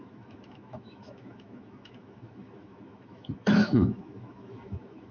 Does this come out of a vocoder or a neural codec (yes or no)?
yes